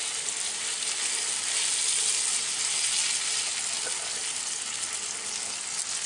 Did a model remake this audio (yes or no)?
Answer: no